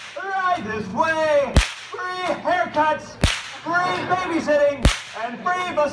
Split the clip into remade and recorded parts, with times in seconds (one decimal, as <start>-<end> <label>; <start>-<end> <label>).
0.0-5.9 recorded